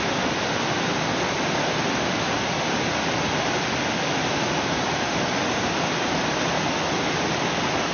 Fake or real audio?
real